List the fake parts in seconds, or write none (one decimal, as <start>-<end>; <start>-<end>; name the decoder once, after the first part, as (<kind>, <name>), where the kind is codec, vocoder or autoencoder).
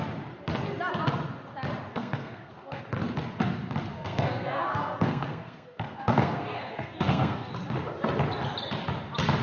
1.9-2.8 (codec, SNAC); 3.9-7.5